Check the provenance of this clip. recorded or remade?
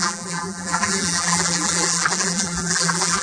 remade